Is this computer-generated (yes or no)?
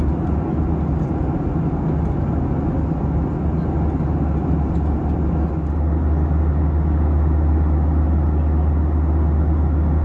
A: no